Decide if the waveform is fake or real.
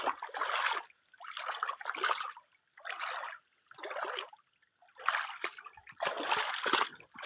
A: real